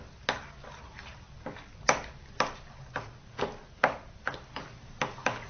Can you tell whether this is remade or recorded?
recorded